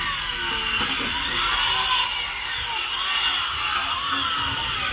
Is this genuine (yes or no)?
yes